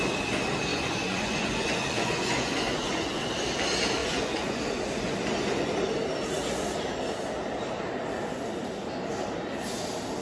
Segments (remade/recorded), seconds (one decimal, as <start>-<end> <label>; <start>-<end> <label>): 0.0-0.7 recorded; 0.7-3.2 remade; 3.2-4.0 recorded; 4.0-4.6 remade; 4.6-10.2 recorded